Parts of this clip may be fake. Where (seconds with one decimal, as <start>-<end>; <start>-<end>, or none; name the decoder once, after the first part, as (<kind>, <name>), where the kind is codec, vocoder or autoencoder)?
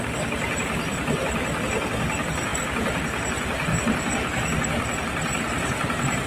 0.9-1.8 (vocoder, BigVGAN v2)